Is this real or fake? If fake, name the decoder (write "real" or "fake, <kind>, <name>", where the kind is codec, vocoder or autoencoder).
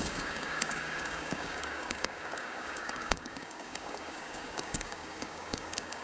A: fake, codec, DAC